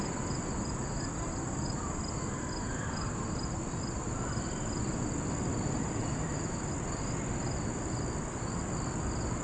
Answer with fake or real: real